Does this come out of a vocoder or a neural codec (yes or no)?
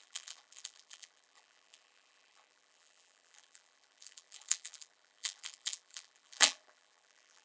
yes